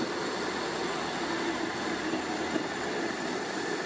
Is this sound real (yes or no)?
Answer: yes